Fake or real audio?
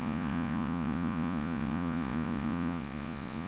fake